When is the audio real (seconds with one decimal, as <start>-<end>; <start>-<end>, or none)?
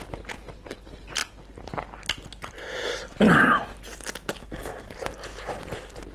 0.0-4.4; 4.9-6.1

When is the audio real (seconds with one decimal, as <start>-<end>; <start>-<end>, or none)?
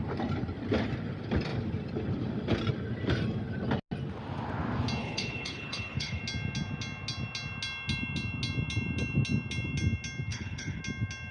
0.0-5.0; 6.2-10.3; 10.8-11.3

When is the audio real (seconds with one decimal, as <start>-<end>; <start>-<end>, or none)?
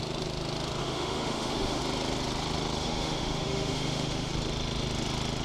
0.0-0.8; 1.8-2.8; 4.3-5.4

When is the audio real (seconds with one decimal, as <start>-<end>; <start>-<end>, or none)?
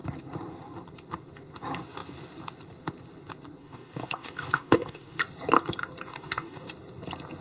0.0-3.6; 5.2-6.1; 6.7-7.4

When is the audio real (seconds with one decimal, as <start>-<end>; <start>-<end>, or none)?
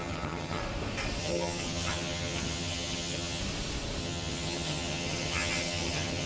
0.6-1.2; 3.4-4.0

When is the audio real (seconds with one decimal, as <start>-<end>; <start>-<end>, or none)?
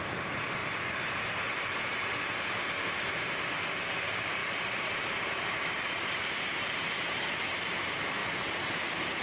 0.6-3.8; 8.2-9.2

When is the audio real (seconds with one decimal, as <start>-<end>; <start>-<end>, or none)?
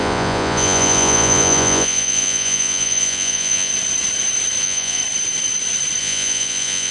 3.7-4.6; 5.0-6.0